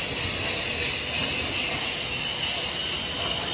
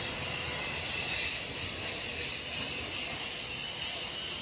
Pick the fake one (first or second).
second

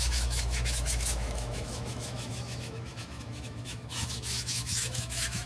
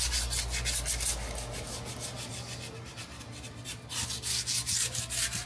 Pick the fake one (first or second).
first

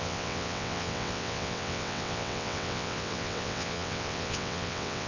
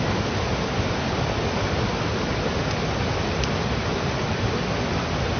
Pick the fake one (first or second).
first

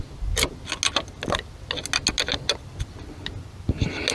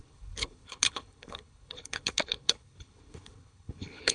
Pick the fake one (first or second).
second